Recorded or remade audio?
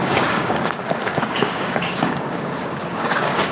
remade